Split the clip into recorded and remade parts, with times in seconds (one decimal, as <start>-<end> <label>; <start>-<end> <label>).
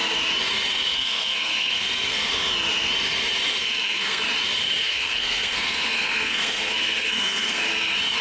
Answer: 0.0-0.9 recorded; 0.9-2.3 remade; 2.3-3.6 recorded; 3.6-4.2 remade; 4.2-4.8 recorded; 4.8-7.6 remade; 7.6-8.2 recorded